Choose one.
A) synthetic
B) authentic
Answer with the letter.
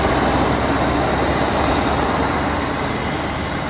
A